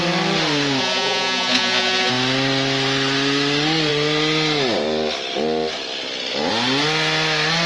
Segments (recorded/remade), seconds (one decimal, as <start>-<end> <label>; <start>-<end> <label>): 0.0-0.8 recorded; 0.8-2.1 remade; 2.1-7.7 recorded